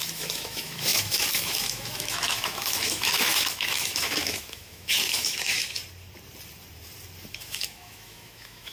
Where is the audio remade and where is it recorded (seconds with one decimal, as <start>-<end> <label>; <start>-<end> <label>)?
0.0-5.8 remade; 5.8-7.3 recorded; 7.3-8.7 remade